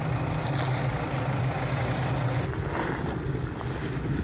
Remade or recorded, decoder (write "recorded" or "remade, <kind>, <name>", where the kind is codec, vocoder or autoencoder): recorded